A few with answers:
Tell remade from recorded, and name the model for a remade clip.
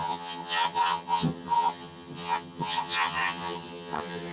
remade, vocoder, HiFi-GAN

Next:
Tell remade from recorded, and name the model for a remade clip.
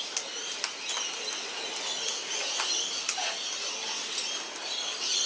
recorded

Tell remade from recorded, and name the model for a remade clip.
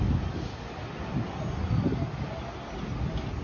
recorded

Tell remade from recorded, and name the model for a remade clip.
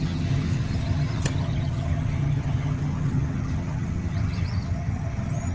remade, vocoder, HiFi-GAN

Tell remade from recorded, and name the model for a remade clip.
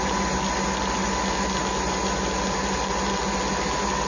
recorded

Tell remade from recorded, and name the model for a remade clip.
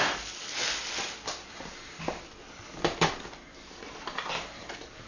recorded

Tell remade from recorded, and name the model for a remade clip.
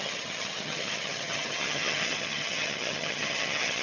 remade, vocoder, HiFi-GAN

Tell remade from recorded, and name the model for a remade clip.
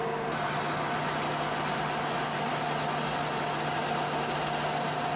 recorded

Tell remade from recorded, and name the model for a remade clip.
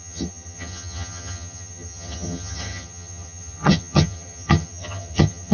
remade, vocoder, HiFi-GAN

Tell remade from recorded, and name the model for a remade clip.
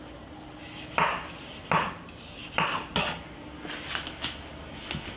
recorded